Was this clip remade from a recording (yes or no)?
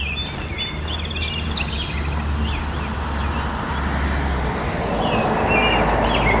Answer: no